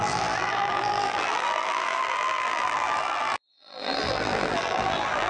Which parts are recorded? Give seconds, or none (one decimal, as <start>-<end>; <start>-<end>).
none